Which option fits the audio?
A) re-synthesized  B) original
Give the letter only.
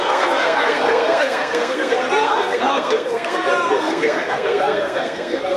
A